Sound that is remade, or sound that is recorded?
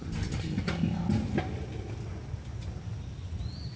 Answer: recorded